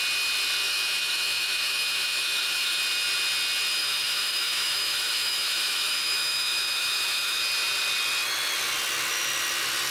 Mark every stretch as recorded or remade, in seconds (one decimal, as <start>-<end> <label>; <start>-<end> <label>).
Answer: 0.0-0.6 recorded; 0.6-2.8 remade; 2.8-3.8 recorded; 3.8-7.4 remade; 7.4-9.9 recorded